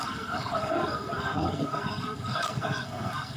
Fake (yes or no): yes